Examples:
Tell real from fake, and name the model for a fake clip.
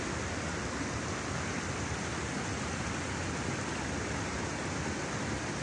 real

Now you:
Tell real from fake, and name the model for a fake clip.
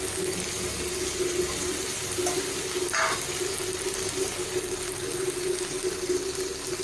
real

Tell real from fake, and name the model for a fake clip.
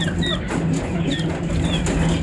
real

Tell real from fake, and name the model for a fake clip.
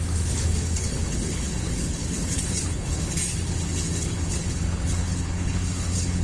fake, codec, HILCodec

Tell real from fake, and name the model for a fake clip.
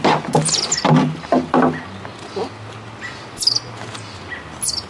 real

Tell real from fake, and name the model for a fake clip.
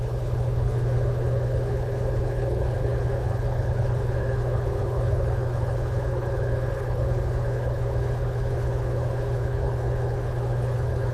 fake, codec, HILCodec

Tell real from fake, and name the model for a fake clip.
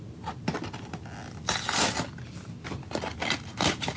real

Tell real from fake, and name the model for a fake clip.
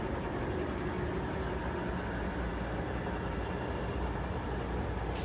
real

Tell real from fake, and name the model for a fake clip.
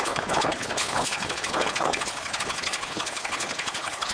fake, codec, HILCodec